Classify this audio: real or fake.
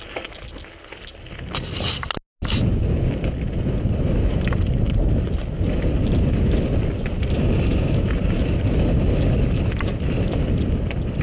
real